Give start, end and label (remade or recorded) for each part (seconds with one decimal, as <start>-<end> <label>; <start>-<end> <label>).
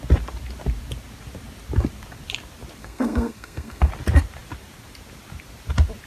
0.0-2.8 recorded; 2.8-3.9 remade; 3.9-6.1 recorded